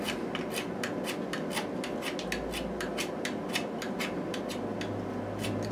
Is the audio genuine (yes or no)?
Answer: yes